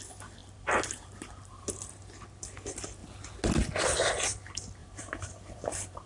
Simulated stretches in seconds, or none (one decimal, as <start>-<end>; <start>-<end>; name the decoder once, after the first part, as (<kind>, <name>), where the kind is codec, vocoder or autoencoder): 0.4-1.7 (vocoder, BigVGAN v2); 4.8-6.1